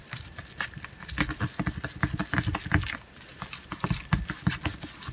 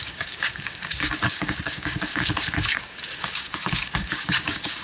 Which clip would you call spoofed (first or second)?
second